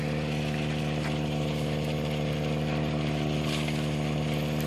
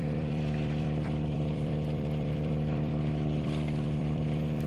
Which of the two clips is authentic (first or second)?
first